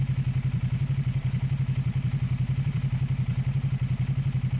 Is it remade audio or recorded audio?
recorded